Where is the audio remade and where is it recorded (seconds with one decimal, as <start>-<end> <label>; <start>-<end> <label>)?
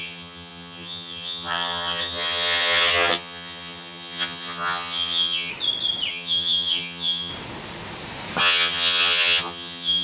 0.0-5.5 remade; 5.5-6.1 recorded; 6.1-7.3 remade; 7.3-8.4 recorded; 8.4-10.0 remade